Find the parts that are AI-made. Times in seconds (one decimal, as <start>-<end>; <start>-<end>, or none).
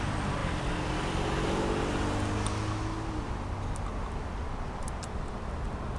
none